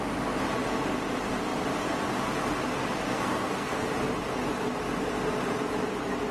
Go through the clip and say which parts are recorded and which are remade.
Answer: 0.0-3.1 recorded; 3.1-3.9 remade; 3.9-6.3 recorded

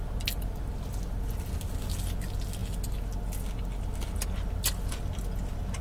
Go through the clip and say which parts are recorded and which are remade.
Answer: 0.0-5.8 recorded

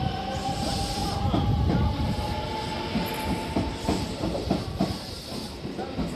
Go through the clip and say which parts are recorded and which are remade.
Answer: 0.0-6.2 recorded

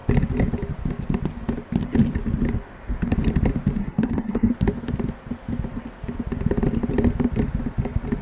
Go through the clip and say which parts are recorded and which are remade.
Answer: 0.0-3.8 recorded; 3.8-4.5 remade; 4.5-8.2 recorded

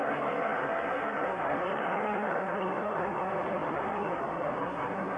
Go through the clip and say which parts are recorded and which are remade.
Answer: 0.0-5.2 remade

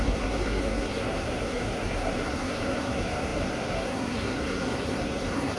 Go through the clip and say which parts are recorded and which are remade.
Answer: 0.0-5.6 remade

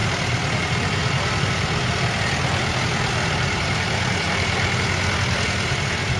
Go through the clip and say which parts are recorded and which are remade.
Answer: 0.0-6.2 recorded